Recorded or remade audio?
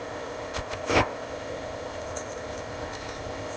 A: remade